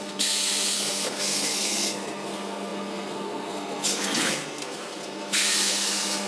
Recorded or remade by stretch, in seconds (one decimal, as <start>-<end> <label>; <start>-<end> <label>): 0.0-6.3 remade